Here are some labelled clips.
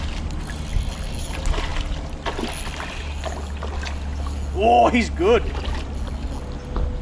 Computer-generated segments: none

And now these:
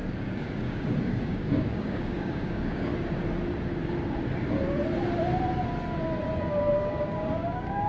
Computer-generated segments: 0.0-2.9 (codec, DAC); 6.7-7.9

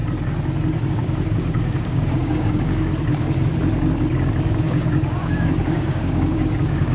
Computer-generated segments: 0.9-2.9 (codec, DAC); 4.3-6.9

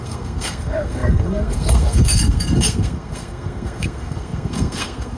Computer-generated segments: 0.0-5.2 (codec, SNAC)

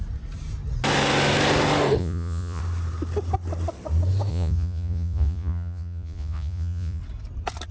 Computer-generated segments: 2.0-2.6 (vocoder, Vocos); 4.3-7.0